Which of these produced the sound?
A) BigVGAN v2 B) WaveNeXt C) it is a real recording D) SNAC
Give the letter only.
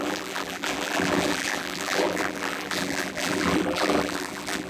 A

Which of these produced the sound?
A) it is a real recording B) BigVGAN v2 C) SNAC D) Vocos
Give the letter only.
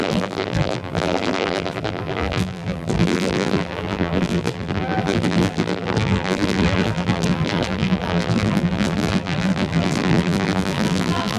B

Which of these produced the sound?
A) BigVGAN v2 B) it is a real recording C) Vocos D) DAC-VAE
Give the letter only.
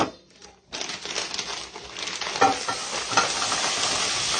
B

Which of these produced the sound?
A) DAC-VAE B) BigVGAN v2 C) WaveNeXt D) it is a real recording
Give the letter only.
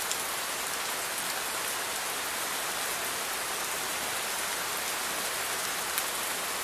D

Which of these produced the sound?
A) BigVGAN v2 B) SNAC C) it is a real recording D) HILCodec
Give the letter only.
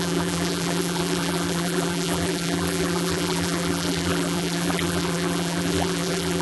A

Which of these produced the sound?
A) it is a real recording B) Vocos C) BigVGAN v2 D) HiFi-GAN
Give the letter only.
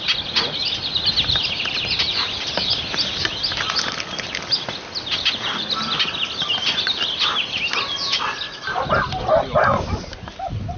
A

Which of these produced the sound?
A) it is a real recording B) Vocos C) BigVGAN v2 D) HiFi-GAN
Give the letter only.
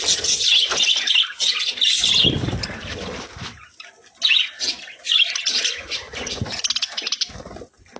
A